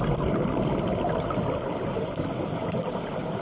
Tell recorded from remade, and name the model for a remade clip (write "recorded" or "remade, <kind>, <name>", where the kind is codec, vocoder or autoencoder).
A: recorded